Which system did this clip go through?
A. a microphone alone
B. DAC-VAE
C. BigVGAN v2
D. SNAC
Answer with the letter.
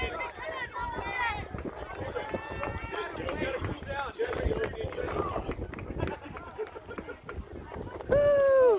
A